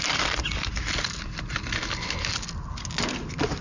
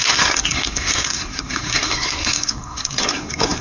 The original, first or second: first